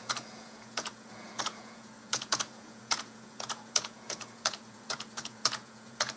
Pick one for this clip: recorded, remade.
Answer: remade